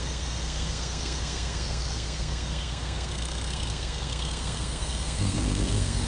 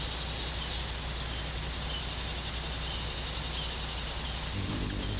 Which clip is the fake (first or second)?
first